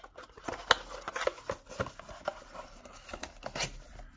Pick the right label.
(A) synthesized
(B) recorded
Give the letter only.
B